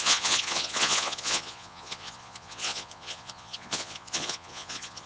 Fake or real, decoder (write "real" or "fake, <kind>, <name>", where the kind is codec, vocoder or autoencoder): fake, vocoder, Vocos